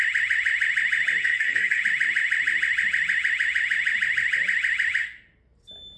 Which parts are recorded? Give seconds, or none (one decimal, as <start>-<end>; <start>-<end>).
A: 0.0-1.2; 1.8-6.0